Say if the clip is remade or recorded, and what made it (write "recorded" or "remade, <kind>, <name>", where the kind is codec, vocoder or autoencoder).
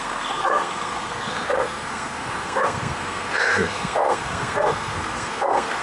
remade, codec, SNAC